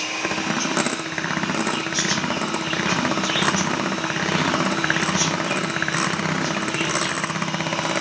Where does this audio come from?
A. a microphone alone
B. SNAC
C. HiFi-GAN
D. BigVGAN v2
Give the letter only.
D